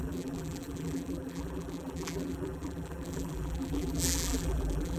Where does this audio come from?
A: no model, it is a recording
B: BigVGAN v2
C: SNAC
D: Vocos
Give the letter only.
B